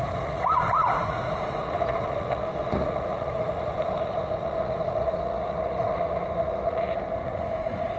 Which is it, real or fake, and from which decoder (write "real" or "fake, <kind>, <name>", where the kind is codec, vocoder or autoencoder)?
fake, vocoder, Vocos